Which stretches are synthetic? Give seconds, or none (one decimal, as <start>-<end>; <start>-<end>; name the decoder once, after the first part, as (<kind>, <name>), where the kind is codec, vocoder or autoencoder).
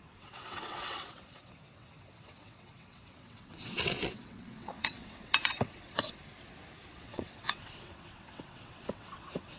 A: 0.0-6.2 (vocoder, WaveNeXt); 6.9-9.6